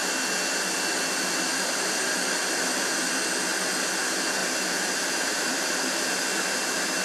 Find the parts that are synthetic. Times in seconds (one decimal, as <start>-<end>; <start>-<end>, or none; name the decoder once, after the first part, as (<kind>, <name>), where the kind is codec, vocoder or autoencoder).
1.5-2.8 (vocoder, BigVGAN v2); 3.5-4.0; 4.4-6.2